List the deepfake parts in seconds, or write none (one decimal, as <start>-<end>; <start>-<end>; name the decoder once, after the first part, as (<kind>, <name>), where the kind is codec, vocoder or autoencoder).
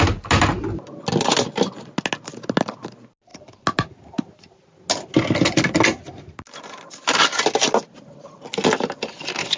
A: none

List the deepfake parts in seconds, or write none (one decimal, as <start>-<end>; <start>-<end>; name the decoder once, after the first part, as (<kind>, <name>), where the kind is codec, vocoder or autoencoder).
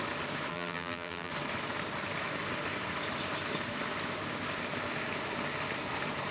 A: 0.5-1.3 (vocoder, BigVGAN v2)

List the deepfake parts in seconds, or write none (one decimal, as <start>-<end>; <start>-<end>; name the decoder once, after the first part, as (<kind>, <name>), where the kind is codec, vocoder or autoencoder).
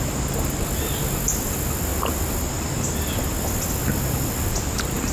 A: 1.9-2.7 (vocoder, BigVGAN v2); 3.8-5.1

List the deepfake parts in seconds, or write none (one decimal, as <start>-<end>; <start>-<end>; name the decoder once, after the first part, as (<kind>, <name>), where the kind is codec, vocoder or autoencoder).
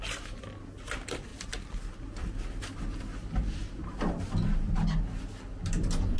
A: 1.3-5.0 (vocoder, BigVGAN v2)